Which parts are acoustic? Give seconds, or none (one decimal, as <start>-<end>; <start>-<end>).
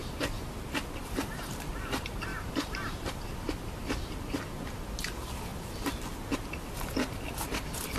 0.0-1.0; 1.7-2.3; 3.5-8.0